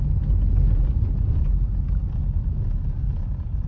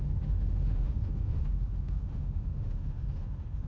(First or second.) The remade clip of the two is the second